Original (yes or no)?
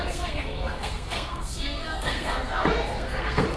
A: no